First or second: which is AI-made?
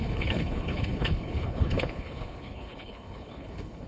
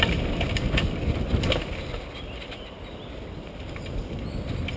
first